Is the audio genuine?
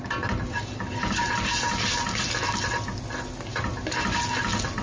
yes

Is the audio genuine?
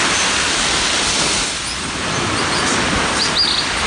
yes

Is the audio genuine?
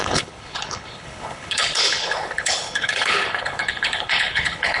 no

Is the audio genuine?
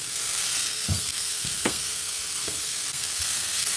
no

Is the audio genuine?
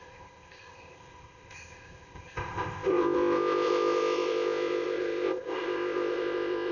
no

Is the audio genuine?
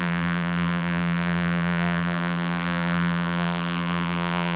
no